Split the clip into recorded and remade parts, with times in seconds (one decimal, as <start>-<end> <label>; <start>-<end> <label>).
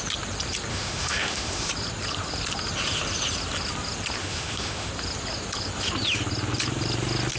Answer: 0.0-0.7 recorded; 0.7-1.7 remade; 1.7-4.2 recorded; 4.2-4.9 remade; 4.9-7.4 recorded